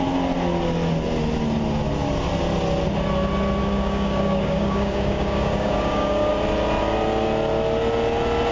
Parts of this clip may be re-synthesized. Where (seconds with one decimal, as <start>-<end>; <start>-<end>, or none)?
3.6-6.3

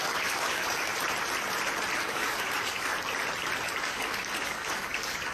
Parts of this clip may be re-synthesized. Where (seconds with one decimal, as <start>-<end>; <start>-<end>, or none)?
0.0-0.9; 2.0-2.9; 3.8-5.3